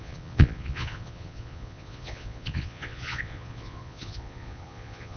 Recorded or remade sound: remade